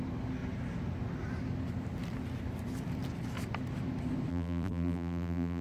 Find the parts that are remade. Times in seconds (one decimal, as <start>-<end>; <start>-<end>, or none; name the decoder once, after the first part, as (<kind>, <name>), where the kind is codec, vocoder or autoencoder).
4.3-5.6 (vocoder, BigVGAN v2)